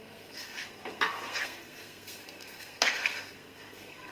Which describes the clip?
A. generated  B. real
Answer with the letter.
A